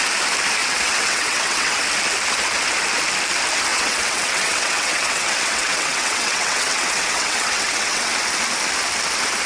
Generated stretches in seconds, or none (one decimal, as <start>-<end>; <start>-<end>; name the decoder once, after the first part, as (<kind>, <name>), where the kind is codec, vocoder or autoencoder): 0.6-1.8 (vocoder, WaveNeXt); 3.7-8.1